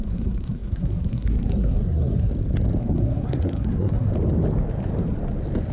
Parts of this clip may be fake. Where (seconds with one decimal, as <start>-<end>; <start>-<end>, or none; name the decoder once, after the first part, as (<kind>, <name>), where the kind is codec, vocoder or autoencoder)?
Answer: 0.0-2.3 (codec, SNAC); 2.8-4.1